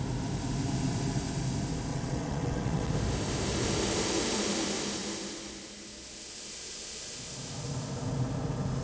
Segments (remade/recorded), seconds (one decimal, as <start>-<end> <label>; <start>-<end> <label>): 0.0-1.9 recorded; 1.9-2.9 remade; 2.9-8.8 recorded